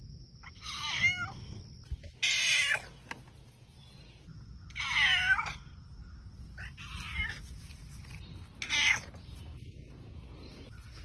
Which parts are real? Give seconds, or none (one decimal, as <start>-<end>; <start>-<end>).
1.0-6.7; 7.8-11.0

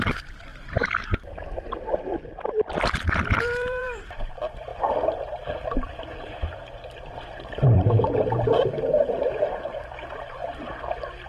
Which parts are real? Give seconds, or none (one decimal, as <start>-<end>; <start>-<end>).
0.5-3.1

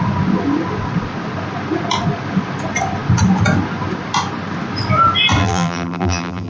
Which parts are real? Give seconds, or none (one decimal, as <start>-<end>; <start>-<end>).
0.0-5.4

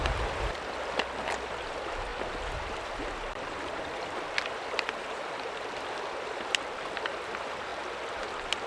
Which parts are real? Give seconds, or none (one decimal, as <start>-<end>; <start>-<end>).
7.7-8.7

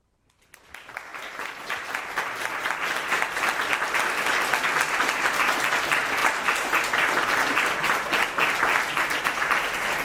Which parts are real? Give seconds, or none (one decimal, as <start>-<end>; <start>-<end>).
0.0-6.2; 6.9-10.0